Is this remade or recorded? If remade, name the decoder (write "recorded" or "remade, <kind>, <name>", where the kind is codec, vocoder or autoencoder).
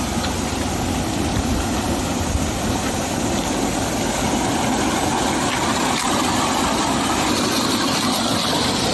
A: recorded